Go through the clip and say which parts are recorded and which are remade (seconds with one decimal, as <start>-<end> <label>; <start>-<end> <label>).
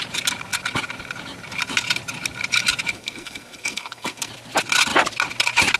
0.0-2.9 recorded; 2.9-4.3 remade; 4.3-5.8 recorded